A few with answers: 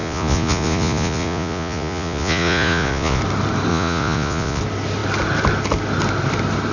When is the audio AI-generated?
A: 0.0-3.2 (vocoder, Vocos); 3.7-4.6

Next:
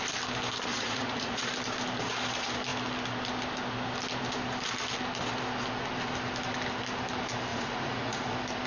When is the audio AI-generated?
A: 0.7-1.4 (vocoder, Vocos); 7.5-8.2

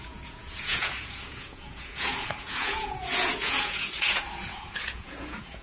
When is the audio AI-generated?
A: 0.0-5.6 (vocoder, Vocos)

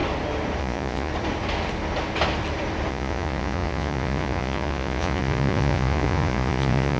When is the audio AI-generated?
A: 0.6-1.1 (vocoder, Vocos); 2.9-7.0

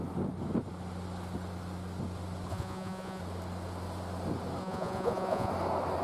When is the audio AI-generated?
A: 2.5-3.2 (vocoder, Vocos); 4.6-5.5

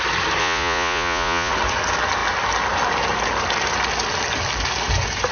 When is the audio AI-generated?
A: 0.4-1.5 (vocoder, Vocos)

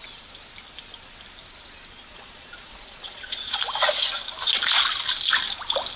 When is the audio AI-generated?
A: 2.1-3.6 (vocoder, Vocos)

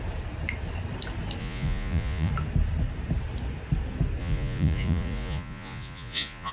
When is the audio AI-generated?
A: 1.4-2.3 (vocoder, Vocos); 4.2-6.5